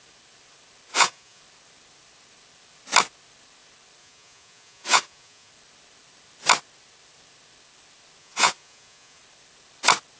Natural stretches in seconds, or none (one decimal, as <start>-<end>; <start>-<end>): 0.0-0.9; 1.4-4.0; 5.5-8.2; 9.2-10.2